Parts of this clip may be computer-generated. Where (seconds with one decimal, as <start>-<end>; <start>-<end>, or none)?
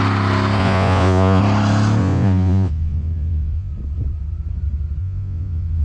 0.6-1.4; 2.0-3.7; 5.0-5.8